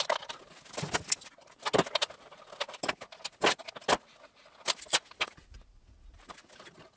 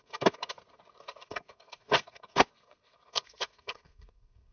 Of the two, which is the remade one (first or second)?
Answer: second